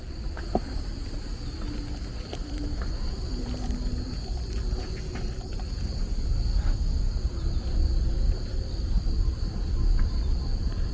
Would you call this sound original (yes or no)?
yes